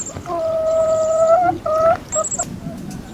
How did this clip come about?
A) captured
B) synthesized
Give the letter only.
A